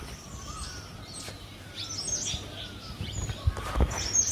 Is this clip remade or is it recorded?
recorded